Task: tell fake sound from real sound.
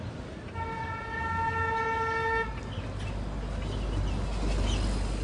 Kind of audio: real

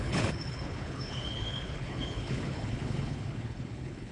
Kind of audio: fake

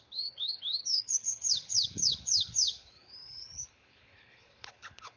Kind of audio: fake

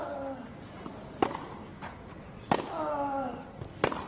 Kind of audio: real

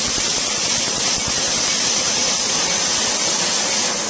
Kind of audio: real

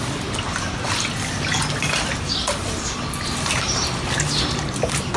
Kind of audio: real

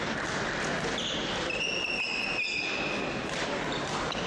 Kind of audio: real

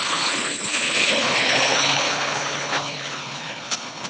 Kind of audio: fake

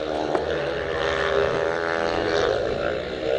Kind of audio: real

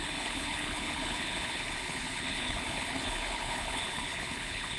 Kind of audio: fake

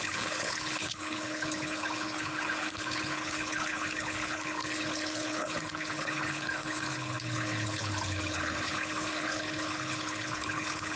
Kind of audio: fake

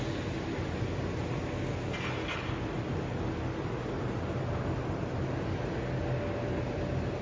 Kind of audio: real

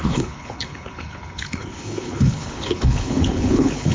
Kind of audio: fake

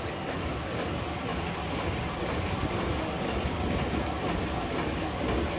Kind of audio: real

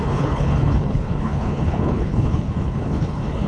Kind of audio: fake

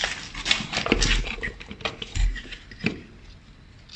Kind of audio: real